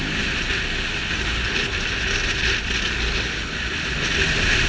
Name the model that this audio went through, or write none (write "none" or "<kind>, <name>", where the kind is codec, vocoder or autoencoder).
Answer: none